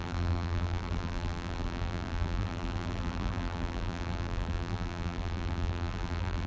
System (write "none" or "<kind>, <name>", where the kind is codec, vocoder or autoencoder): vocoder, BigVGAN v2